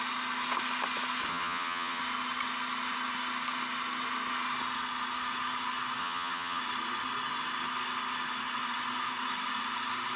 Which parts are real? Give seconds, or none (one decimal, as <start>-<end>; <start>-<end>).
0.0-1.3; 2.0-6.0; 6.6-10.2